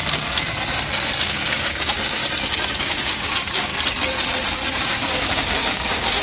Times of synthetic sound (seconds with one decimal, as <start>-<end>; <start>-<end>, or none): 1.3-2.2; 2.8-3.7; 4.7-6.2